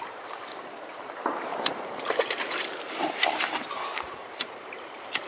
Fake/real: fake